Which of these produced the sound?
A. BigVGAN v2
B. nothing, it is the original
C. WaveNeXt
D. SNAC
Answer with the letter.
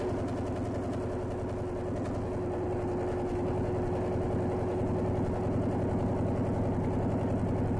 B